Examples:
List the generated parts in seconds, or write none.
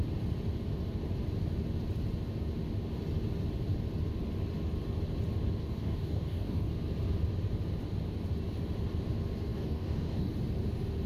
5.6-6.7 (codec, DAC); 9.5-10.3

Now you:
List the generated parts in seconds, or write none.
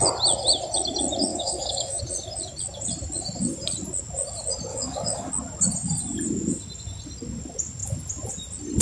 1.3-2.0 (codec, DAC); 4.7-5.3